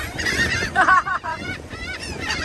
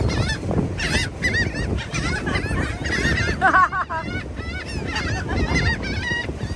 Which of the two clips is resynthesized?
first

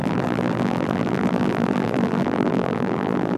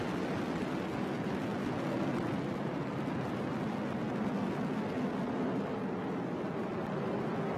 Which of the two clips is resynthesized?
first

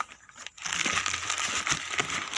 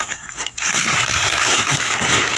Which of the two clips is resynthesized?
second